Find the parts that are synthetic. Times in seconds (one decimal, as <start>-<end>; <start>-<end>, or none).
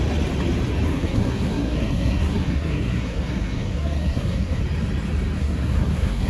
0.9-4.6; 5.4-6.3